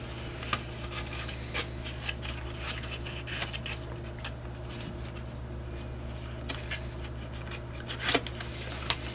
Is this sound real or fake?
real